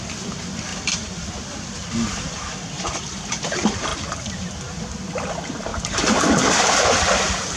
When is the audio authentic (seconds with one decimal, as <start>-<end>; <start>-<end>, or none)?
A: 3.9-5.3; 5.7-7.6